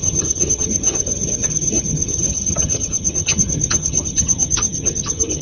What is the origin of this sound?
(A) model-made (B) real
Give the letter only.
A